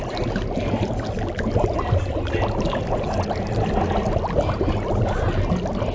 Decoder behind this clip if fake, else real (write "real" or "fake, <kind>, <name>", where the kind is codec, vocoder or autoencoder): real